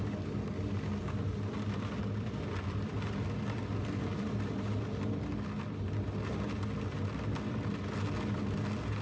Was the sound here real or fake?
real